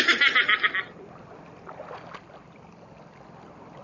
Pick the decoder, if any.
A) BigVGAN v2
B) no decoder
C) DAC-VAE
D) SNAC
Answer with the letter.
B